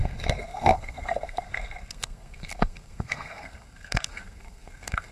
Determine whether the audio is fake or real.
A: fake